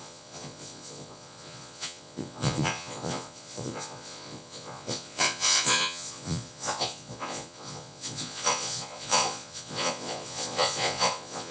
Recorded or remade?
remade